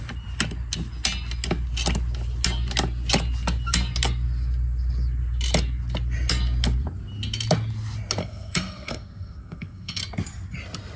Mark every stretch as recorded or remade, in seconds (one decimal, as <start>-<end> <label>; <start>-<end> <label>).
0.0-8.2 recorded; 8.2-10.0 remade; 10.0-11.0 recorded